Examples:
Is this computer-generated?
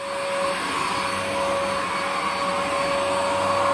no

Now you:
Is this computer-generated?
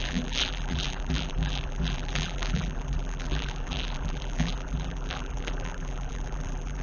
yes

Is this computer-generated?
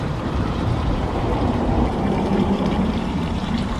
yes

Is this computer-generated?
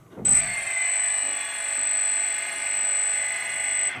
no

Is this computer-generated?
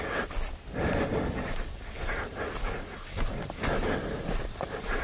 no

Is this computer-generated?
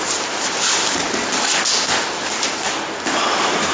no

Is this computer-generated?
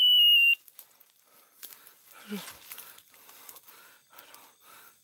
no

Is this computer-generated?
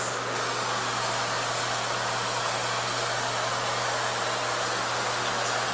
no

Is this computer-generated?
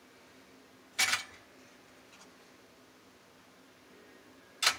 no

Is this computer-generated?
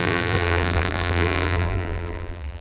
yes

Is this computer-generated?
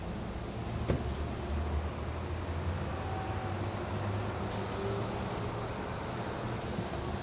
no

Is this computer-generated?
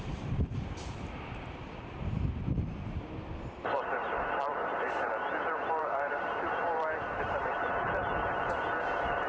yes